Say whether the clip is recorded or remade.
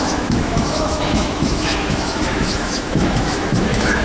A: remade